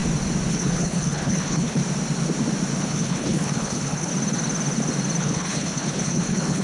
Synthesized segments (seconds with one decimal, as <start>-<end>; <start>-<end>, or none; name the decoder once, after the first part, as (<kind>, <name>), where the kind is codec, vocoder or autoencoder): 0.5-1.8 (codec, HILCodec); 2.8-4.1; 5.2-6.6